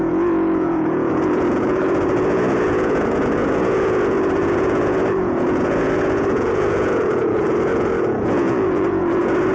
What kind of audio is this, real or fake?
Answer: fake